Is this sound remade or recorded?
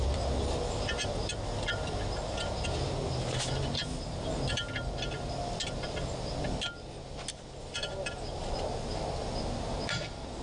recorded